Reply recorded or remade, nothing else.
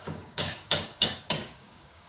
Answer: remade